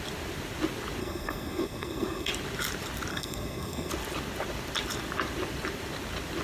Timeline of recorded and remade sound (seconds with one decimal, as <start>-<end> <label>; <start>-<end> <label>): 0.0-1.0 recorded; 1.0-2.3 remade; 2.3-3.1 recorded; 3.1-3.9 remade; 3.9-6.4 recorded